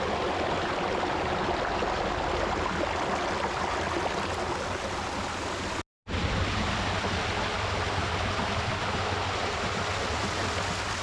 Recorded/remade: recorded